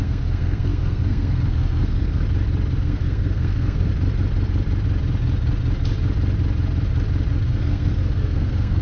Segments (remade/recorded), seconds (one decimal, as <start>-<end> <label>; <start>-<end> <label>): 0.0-2.2 remade; 2.2-2.8 recorded; 2.8-3.9 remade; 3.9-7.3 recorded; 7.3-8.8 remade